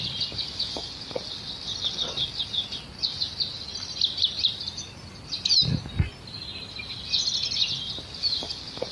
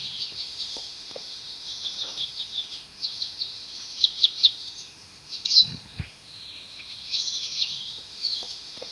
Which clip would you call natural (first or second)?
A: first